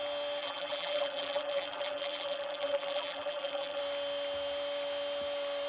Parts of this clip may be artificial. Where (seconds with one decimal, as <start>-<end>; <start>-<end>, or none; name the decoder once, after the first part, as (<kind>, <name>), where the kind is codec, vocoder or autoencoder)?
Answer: 0.4-3.8 (vocoder, BigVGAN v2)